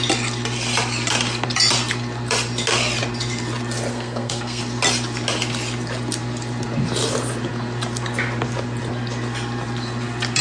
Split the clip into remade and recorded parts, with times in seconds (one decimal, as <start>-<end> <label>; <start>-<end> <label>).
0.0-3.9 recorded; 3.9-4.6 remade; 4.6-10.4 recorded